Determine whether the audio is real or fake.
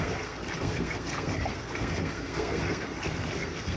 fake